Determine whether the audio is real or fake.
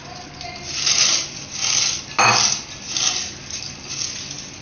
real